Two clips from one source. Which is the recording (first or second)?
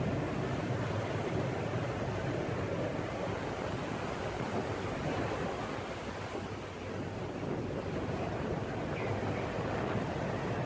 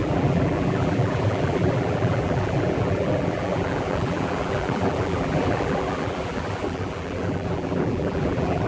first